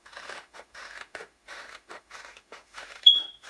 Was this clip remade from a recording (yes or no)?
yes